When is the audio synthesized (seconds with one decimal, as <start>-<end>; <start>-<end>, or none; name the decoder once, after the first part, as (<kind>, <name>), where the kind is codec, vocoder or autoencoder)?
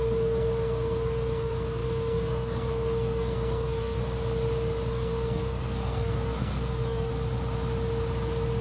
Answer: 0.0-4.0 (codec, SNAC); 4.9-7.1